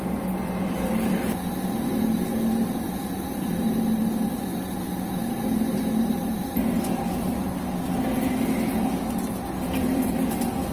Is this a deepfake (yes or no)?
yes